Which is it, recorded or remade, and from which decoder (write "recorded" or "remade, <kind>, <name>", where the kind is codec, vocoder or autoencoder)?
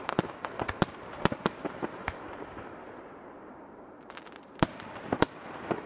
remade, vocoder, BigVGAN v2